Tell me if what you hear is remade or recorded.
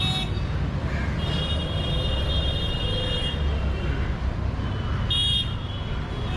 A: recorded